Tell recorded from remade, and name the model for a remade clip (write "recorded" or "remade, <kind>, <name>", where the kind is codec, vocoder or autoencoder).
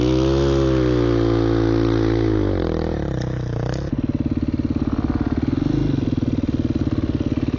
recorded